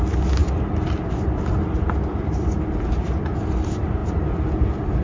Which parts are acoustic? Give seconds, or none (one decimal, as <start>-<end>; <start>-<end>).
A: 0.0-5.0